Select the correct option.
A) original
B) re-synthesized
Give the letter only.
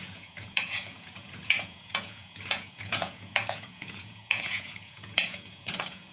B